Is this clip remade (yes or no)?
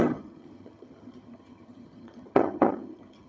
yes